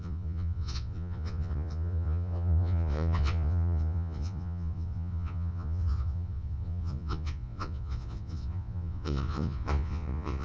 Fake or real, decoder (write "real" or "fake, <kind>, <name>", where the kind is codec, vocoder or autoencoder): fake, vocoder, Vocos